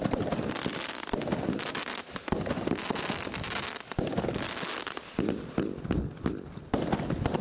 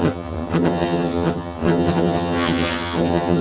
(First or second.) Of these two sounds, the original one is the first